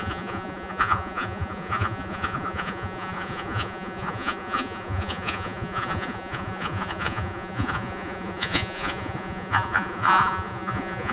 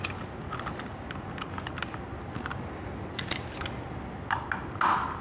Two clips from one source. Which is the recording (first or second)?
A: second